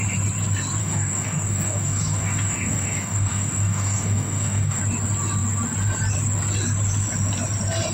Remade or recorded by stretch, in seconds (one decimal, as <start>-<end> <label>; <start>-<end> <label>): 0.0-0.8 recorded; 0.8-4.8 remade; 4.8-7.9 recorded